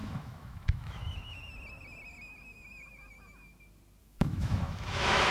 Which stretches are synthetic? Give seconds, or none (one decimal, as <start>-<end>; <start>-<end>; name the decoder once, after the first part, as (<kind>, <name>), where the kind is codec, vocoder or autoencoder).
0.0-1.5 (autoencoder, DAC-VAE); 4.0-5.3